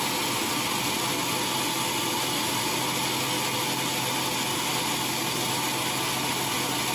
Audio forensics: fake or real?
real